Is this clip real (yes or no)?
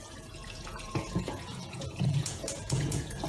no